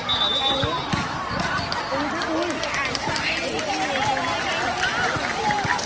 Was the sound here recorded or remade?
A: recorded